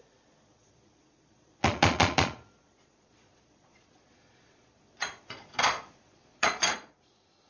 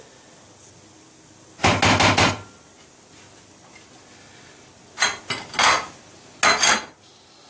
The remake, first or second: first